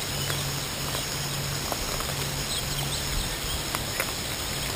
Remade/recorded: recorded